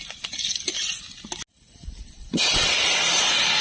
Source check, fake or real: real